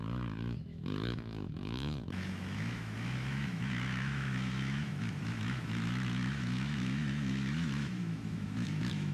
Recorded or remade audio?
remade